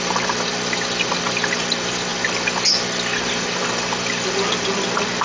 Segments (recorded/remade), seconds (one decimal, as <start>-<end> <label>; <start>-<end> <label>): 0.0-5.2 recorded